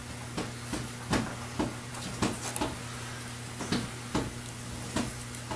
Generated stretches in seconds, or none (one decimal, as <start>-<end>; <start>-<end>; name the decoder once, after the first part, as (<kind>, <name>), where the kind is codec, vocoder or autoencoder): none